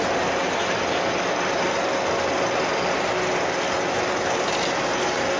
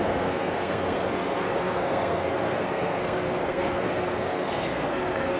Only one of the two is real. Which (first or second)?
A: first